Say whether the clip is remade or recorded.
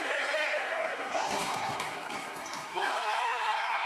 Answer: remade